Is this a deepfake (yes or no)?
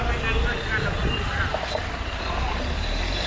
no